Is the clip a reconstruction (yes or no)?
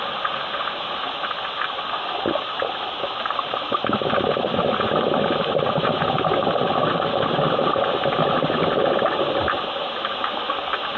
no